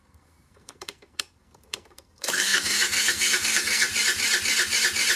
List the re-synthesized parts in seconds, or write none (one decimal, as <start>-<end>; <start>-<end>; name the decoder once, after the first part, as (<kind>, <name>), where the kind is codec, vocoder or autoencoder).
0.0-3.9 (codec, SNAC)